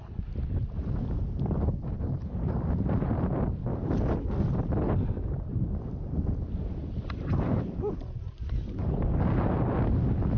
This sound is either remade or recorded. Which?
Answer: recorded